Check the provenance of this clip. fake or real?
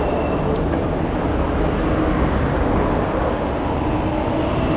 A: real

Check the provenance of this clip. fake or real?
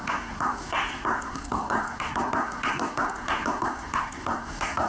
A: fake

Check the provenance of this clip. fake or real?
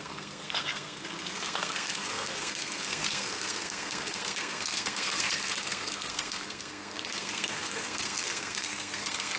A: fake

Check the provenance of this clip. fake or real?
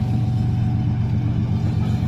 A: real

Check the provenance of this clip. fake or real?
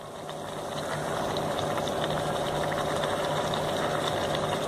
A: real